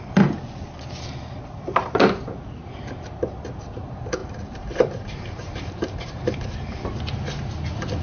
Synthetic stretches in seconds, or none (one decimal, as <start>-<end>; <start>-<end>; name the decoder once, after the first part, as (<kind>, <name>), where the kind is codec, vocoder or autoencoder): 4.2-6.8 (vocoder, BigVGAN v2)